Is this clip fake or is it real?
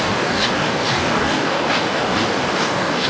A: fake